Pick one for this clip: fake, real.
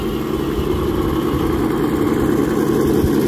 real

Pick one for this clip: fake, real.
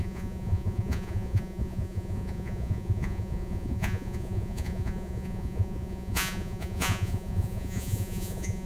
fake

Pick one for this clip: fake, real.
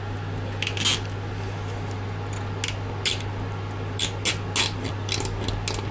real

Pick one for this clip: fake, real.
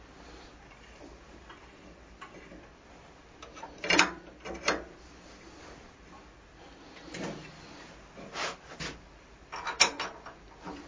real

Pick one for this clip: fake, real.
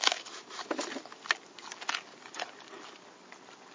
real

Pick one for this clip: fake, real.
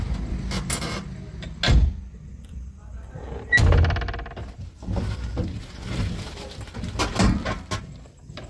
real